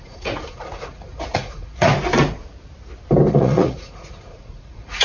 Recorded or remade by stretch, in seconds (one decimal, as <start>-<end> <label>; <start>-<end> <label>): 0.0-1.9 remade; 1.9-3.3 recorded; 3.3-5.0 remade